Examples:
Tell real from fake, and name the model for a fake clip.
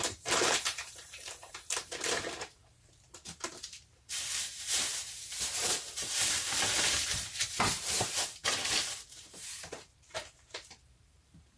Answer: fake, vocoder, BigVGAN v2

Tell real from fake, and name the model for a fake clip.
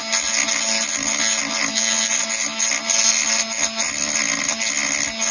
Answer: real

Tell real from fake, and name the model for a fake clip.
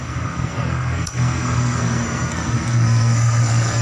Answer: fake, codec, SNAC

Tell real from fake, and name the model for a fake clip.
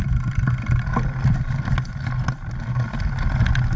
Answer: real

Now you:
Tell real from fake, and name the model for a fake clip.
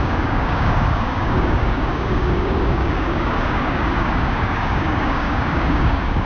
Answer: fake, codec, DAC